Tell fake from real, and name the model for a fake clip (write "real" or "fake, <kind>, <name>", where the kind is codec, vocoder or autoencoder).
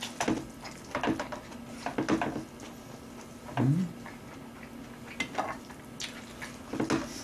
real